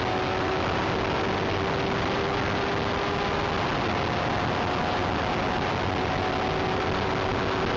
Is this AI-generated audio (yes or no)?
no